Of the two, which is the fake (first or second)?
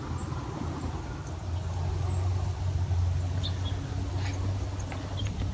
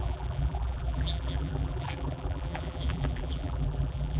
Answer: second